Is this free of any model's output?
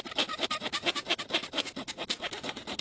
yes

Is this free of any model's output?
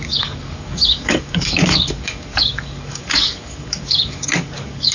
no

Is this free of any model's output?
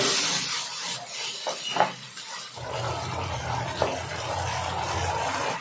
yes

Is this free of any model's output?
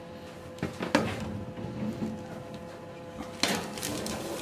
yes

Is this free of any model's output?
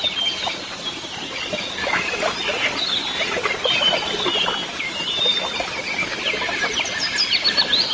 yes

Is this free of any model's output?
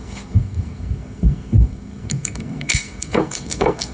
no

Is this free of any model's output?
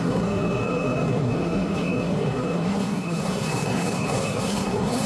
no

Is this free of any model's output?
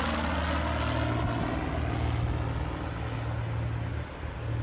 yes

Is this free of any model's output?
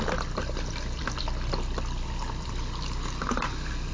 yes